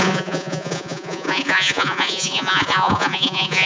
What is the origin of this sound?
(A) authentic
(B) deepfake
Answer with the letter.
B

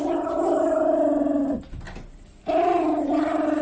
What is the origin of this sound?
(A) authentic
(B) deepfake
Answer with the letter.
A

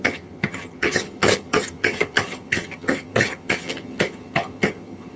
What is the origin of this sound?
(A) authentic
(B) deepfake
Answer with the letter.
B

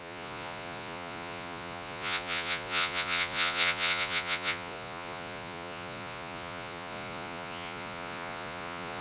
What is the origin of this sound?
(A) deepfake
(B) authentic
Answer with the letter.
A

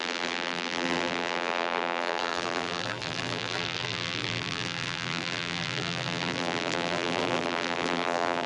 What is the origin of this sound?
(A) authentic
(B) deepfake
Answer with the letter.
B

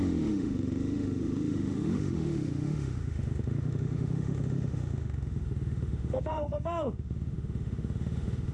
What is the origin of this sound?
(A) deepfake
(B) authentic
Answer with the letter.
A